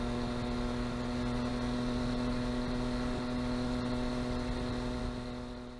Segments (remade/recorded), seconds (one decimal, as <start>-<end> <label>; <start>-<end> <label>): 0.0-5.8 recorded